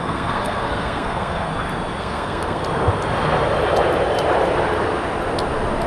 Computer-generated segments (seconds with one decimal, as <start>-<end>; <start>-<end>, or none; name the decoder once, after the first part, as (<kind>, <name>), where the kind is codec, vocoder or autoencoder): 0.0-1.5 (codec, SNAC); 2.0-2.6